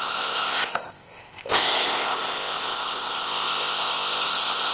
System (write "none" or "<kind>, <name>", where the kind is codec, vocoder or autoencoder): codec, ZipCodec